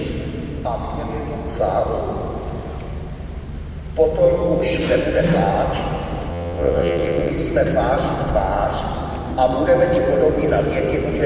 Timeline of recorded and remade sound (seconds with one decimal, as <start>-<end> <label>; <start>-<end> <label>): 0.0-6.3 recorded; 6.3-7.3 remade; 7.3-11.3 recorded